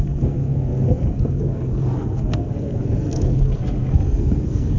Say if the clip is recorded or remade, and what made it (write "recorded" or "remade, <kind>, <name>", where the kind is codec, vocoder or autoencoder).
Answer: remade, codec, SNAC